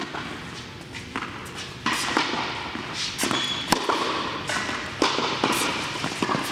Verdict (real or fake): real